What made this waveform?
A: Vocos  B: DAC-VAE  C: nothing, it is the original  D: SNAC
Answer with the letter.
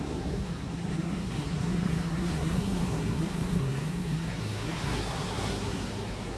D